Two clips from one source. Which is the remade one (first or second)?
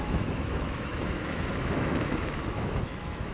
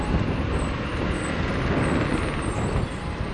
first